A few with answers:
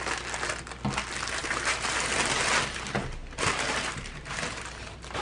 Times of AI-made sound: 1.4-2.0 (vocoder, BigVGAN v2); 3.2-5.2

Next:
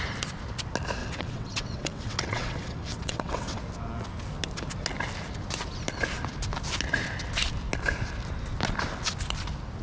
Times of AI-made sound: 1.0-3.6 (vocoder, WaveNeXt)